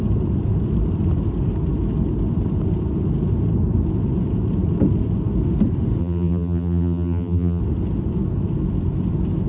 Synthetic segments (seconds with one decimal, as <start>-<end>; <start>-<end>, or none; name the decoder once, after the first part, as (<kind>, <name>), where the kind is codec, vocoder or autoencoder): 6.0-7.6 (vocoder, BigVGAN v2)